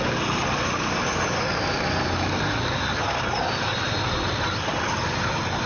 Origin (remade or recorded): recorded